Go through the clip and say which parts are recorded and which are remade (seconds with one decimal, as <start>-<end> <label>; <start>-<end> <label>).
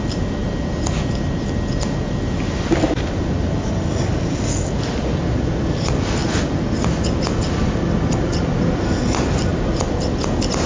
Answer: 0.0-10.7 recorded